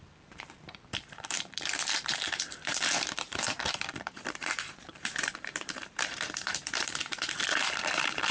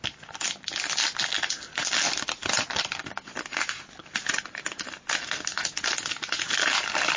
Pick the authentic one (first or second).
second